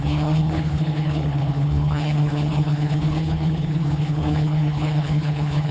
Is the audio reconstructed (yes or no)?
yes